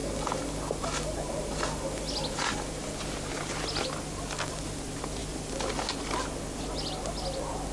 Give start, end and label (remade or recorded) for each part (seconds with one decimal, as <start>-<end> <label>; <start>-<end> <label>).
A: 0.0-7.7 recorded